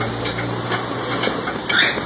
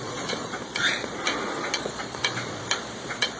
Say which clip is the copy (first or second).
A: second